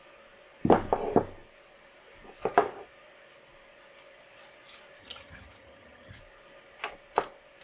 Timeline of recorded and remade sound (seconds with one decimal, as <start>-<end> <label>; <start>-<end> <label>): 0.0-5.0 recorded; 5.0-6.2 remade; 6.2-7.6 recorded